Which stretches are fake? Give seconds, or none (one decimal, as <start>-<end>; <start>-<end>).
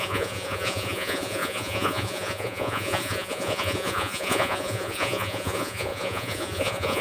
0.0-7.0